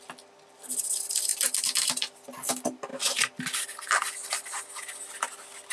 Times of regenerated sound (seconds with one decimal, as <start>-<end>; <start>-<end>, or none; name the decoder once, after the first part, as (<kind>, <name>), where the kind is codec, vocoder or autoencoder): none